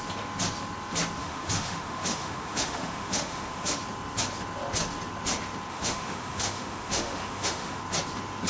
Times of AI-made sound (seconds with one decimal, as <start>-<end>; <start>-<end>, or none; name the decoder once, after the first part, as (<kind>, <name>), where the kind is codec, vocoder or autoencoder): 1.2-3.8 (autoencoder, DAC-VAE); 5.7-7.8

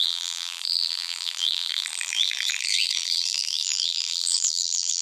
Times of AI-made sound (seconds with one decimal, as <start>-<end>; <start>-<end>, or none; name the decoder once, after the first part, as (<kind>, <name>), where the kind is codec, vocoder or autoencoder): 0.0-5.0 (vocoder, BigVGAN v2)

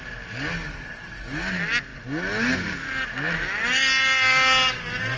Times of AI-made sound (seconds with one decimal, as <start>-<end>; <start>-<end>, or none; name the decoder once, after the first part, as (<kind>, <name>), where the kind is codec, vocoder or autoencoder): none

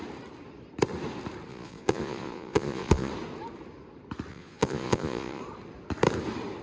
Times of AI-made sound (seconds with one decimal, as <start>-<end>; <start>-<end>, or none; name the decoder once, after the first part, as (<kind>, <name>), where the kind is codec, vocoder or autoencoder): 1.5-3.1 (vocoder, Vocos); 4.3-5.4

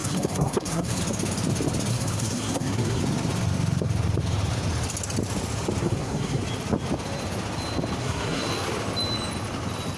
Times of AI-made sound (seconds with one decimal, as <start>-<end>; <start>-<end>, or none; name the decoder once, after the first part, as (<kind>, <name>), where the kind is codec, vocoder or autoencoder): 0.0-1.0 (codec, SNAC); 1.9-3.0; 5.8-6.4; 8.0-8.5